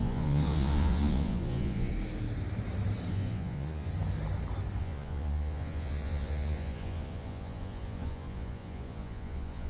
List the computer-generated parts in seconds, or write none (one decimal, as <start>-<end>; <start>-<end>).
0.0-1.9; 3.1-3.9; 4.8-9.7